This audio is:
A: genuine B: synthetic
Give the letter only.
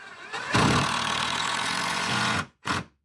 B